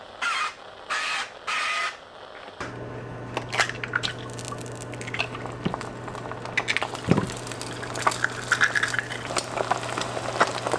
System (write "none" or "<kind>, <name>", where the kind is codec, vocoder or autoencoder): none